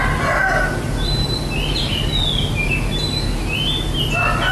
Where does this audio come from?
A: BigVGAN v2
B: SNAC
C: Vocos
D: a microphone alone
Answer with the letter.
D